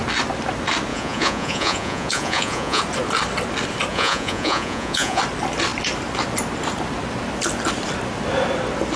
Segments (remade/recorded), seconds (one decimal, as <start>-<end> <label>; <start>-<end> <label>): 0.0-0.9 recorded; 0.9-2.8 remade; 2.8-3.9 recorded; 3.9-5.2 remade; 5.2-9.0 recorded